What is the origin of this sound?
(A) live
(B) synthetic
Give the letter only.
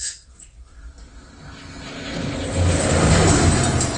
A